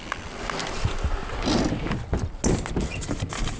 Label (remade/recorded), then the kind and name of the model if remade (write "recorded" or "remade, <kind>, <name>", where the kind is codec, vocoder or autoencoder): recorded